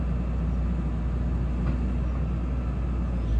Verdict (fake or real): real